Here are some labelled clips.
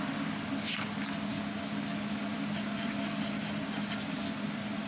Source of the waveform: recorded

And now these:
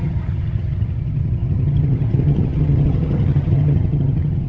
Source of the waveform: remade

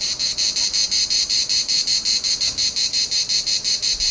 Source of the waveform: recorded